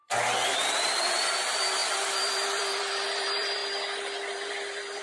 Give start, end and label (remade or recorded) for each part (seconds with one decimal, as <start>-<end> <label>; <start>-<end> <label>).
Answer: 0.0-3.6 remade; 3.6-4.3 recorded; 4.3-5.0 remade